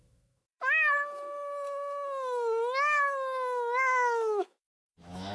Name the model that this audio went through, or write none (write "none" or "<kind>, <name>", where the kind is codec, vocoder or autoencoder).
autoencoder, DAC-VAE